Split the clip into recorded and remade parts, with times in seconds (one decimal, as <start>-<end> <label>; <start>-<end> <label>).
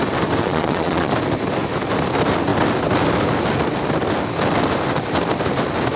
0.0-0.4 recorded; 0.4-1.1 remade; 1.1-6.0 recorded